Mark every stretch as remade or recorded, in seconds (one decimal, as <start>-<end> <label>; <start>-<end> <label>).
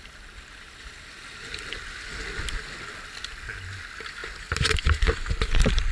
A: 0.0-5.9 recorded